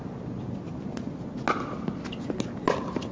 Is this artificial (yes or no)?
no